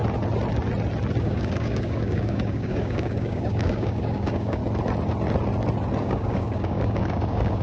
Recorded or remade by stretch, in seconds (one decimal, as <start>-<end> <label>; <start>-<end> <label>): 0.0-1.2 recorded; 1.2-4.6 remade; 4.6-6.0 recorded; 6.0-7.6 remade